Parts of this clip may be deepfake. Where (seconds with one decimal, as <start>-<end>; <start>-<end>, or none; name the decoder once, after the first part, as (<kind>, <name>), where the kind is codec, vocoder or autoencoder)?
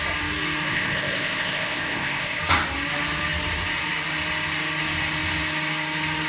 0.7-2.4 (codec, ZipCodec)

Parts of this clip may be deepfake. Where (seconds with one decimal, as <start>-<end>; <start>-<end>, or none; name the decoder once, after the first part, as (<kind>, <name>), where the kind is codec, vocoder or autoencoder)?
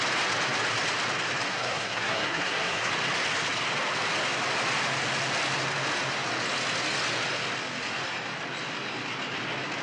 1.5-2.9 (codec, SNAC)